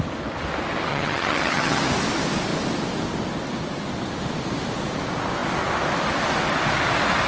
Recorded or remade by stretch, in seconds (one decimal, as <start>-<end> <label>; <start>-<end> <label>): 0.0-0.9 recorded; 0.9-1.8 remade; 1.8-7.3 recorded